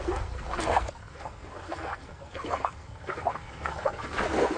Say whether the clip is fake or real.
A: fake